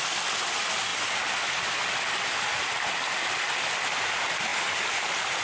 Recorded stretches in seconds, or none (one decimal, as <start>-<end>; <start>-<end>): 0.0-5.4